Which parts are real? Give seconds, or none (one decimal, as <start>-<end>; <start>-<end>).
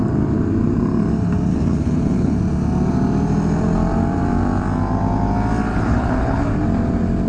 0.0-1.5; 2.4-5.7; 6.4-7.3